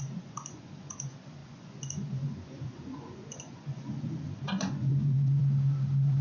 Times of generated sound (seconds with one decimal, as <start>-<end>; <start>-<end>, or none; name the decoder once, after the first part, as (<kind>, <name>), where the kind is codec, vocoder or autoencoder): 0.0-5.4 (vocoder, Vocos)